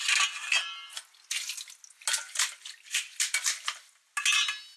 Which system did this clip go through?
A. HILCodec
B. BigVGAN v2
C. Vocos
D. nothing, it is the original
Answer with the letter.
D